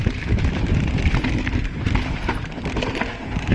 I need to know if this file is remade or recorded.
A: recorded